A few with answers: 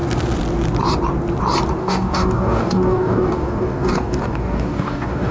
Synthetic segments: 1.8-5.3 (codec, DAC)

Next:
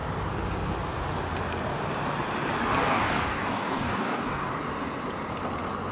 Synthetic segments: 2.8-4.5 (codec, DAC)

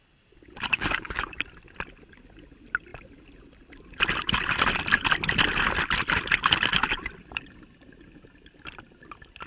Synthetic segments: 0.7-1.3 (codec, DAC)

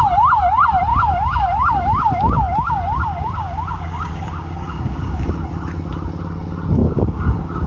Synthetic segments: 0.9-5.3 (codec, DAC); 6.8-7.7

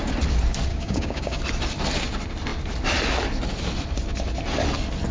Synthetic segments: 0.7-1.4 (codec, DAC)

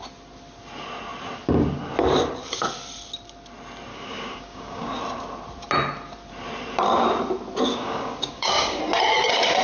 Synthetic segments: 3.9-5.0 (codec, DAC); 7.7-8.8

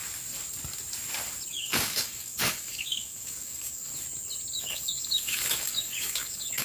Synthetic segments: 1.5-3.9 (codec, DAC); 4.6-6.6